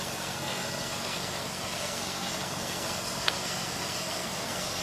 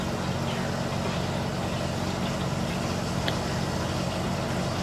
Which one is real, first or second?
second